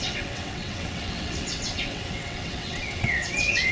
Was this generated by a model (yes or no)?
yes